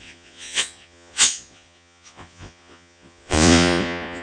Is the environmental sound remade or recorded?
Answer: remade